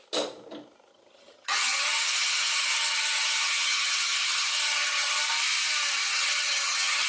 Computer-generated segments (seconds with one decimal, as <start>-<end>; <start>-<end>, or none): 0.9-5.2; 6.0-7.1